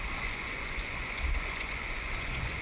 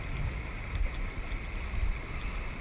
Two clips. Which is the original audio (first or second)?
second